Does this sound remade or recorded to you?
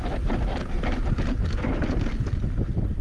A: recorded